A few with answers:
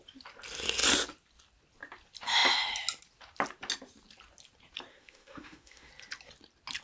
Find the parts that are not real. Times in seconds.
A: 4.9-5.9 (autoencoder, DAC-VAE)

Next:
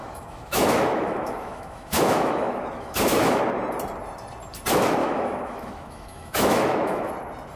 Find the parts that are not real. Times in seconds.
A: 0.0-3.4 (autoencoder, DAC-VAE); 5.0-7.1